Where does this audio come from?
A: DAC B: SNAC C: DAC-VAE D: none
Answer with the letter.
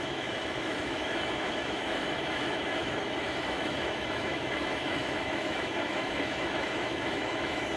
C